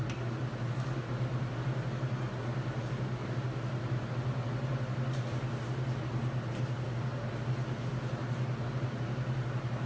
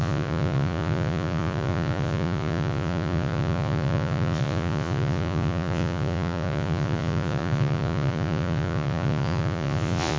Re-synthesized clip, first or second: second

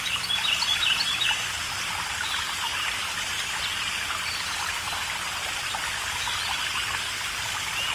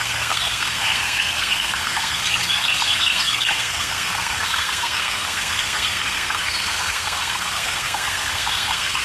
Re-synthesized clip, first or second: second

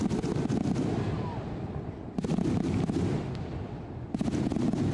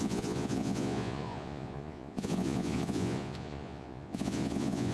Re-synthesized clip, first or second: second